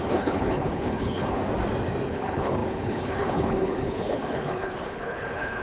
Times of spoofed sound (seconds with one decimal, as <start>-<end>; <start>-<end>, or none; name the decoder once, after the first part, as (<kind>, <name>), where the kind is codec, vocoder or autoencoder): 0.0-1.4 (codec, HILCodec); 2.1-5.6